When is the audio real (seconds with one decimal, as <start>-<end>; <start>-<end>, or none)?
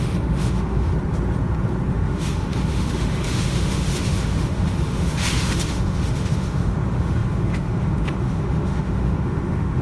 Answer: 0.9-1.9